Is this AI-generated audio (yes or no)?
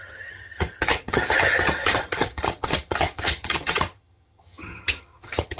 yes